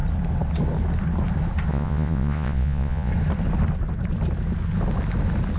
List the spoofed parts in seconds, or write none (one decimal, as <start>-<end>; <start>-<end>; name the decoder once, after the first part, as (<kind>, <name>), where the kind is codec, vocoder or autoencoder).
1.7-3.1 (vocoder, Vocos)